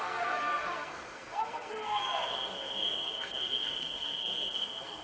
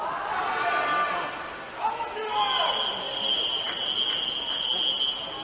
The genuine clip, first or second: second